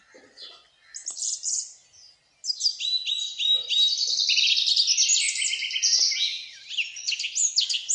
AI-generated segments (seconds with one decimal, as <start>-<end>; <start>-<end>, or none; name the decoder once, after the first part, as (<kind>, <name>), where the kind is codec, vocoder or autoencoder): none

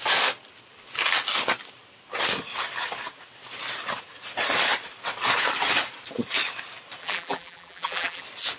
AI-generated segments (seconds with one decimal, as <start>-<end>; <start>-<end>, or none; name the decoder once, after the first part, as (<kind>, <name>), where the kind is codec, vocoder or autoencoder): 7.0-8.2 (vocoder, BigVGAN v2)

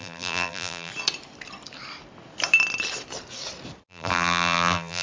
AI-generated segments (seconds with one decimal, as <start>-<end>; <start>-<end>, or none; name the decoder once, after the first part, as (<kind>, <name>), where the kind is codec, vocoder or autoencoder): 0.0-0.9 (vocoder, BigVGAN v2); 3.9-5.0

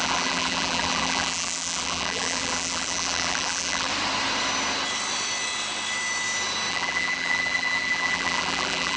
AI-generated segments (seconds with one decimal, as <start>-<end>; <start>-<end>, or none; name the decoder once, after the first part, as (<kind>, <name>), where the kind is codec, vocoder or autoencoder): 0.0-3.9 (vocoder, BigVGAN v2); 6.7-9.0